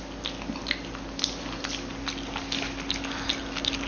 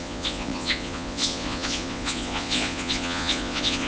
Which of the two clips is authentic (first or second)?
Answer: first